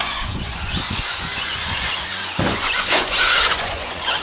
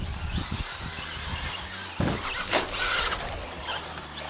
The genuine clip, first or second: second